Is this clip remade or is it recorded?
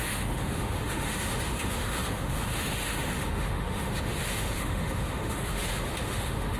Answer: remade